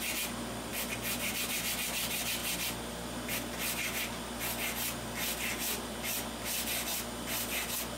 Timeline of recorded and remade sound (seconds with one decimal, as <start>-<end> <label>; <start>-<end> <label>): 0.0-8.0 recorded